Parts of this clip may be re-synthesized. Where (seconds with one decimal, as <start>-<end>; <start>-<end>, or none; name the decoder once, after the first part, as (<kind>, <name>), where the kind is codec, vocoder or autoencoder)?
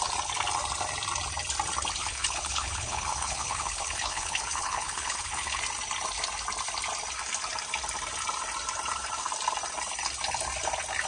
2.0-5.6 (codec, HILCodec)